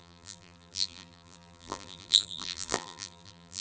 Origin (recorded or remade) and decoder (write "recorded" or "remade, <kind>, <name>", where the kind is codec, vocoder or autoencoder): remade, vocoder, BigVGAN v2